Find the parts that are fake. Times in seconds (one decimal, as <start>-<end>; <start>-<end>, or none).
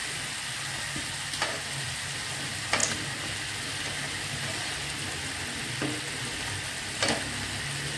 none